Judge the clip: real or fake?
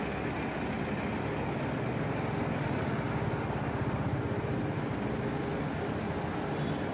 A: real